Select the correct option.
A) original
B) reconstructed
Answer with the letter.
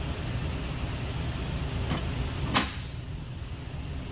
A